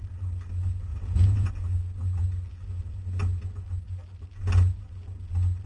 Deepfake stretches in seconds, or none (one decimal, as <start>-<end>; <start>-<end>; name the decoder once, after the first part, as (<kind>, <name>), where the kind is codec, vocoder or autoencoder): 0.9-1.5 (vocoder, Vocos)